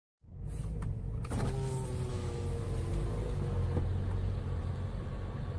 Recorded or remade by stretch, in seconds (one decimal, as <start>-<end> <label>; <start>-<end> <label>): 0.0-2.1 recorded; 2.1-2.6 remade; 2.6-5.6 recorded

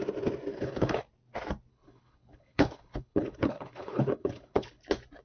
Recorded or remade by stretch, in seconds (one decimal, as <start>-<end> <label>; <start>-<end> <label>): 0.0-0.5 recorded; 0.5-1.0 remade; 1.0-1.7 recorded; 1.7-4.8 remade; 4.8-5.2 recorded

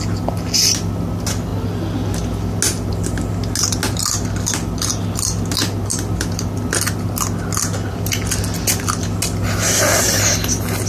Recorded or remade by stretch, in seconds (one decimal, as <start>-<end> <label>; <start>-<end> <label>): 0.0-10.9 recorded

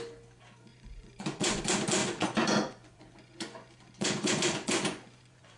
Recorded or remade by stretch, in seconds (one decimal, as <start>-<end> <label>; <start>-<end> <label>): 0.0-0.7 recorded; 0.7-1.6 remade; 1.6-2.0 recorded; 2.0-5.6 remade

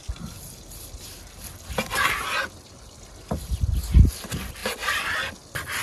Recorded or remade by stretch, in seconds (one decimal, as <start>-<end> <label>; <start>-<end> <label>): 0.0-4.6 recorded; 4.6-5.3 remade; 5.3-5.8 recorded

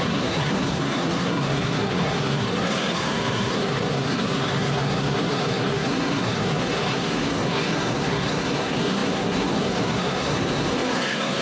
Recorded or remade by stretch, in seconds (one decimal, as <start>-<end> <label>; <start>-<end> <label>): 0.0-11.4 remade